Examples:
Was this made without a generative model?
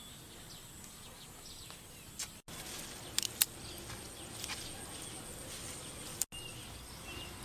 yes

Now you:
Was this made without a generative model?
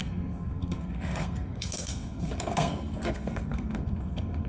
no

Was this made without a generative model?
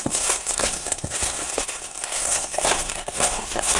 no